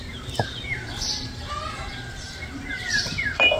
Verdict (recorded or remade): remade